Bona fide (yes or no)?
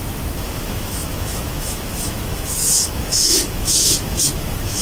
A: no